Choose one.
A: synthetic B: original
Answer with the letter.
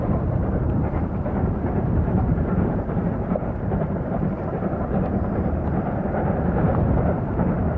A